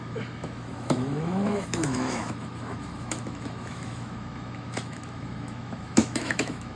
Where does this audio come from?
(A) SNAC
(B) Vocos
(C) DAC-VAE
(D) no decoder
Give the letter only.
C